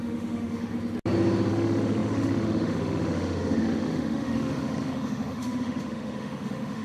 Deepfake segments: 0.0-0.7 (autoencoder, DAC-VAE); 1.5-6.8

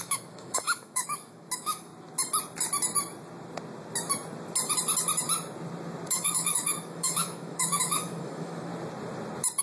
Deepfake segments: 0.0-1.9 (autoencoder, DAC-VAE); 6.1-8.7

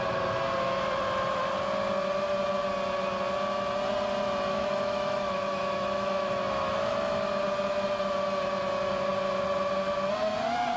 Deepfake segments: 4.5-7.3 (autoencoder, DAC-VAE)

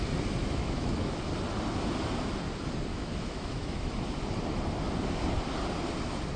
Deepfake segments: 0.4-1.1 (autoencoder, DAC-VAE); 2.9-3.9

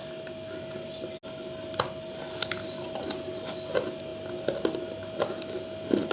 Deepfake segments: none

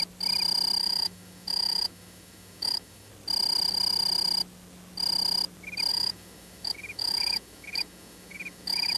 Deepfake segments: 0.8-3.1 (autoencoder, DAC-VAE); 5.9-9.0